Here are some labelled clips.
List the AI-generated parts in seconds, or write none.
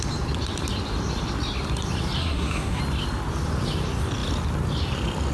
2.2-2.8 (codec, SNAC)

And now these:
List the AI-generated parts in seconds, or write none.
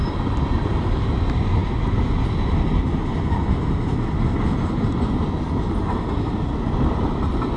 none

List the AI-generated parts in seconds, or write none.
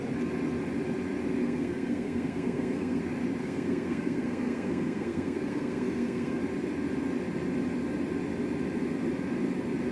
1.4-3.0 (codec, SNAC); 3.4-6.4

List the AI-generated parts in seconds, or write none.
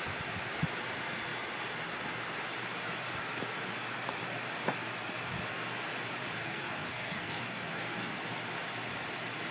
6.4-8.1 (codec, SNAC)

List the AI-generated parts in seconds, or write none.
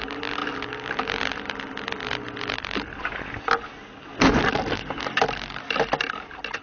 none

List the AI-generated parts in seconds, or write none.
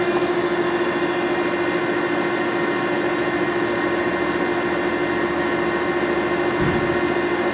none